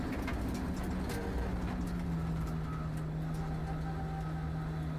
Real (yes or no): yes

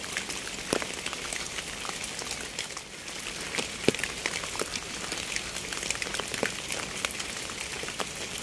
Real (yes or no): yes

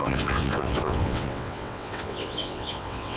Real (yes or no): no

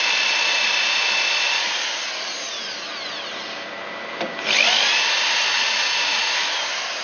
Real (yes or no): yes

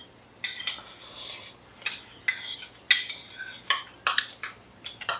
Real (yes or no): yes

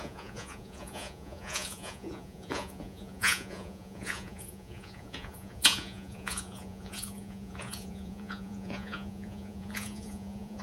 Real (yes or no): no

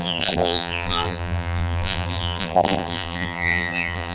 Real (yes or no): no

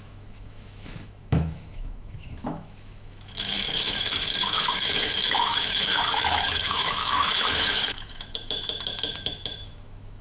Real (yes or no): no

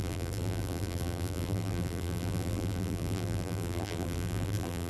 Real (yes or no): no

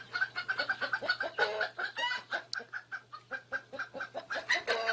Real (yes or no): yes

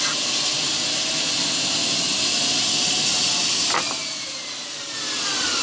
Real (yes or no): yes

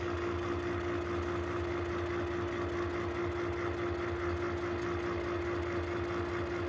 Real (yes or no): yes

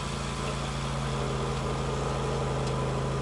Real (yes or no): yes